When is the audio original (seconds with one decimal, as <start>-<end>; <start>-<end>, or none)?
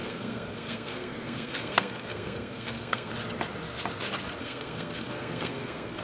3.1-4.4